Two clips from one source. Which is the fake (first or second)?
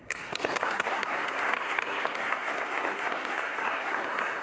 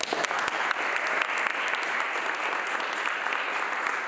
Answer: first